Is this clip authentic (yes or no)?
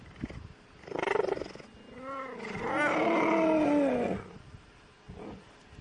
yes